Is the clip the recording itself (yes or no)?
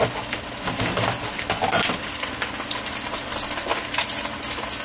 yes